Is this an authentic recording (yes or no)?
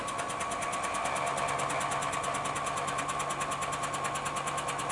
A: yes